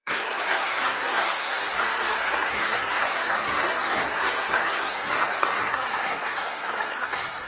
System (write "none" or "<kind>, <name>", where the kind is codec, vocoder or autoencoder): codec, SNAC